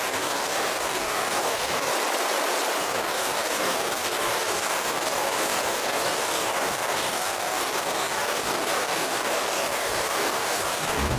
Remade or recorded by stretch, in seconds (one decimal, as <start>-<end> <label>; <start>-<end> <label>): 0.0-1.9 remade; 1.9-2.8 recorded; 2.8-11.2 remade